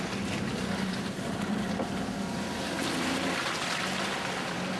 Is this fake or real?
real